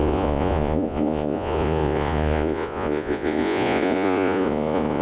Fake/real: fake